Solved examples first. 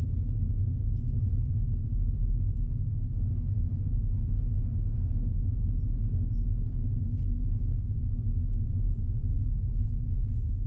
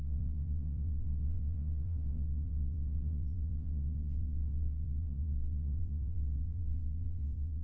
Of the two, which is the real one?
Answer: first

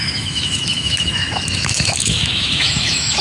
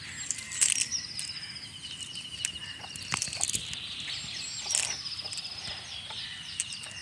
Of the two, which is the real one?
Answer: second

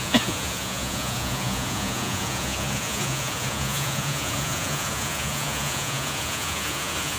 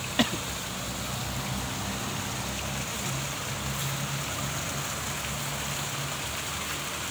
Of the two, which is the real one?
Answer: second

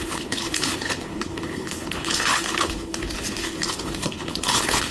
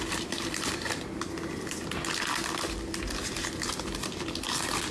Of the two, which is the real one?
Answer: second